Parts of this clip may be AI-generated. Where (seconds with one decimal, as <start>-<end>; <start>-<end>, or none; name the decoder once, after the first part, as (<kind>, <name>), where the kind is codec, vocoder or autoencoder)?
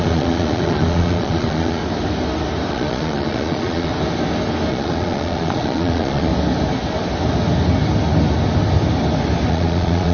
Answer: 0.0-1.8 (vocoder, Vocos); 2.7-3.9; 4.7-6.3; 9.5-10.1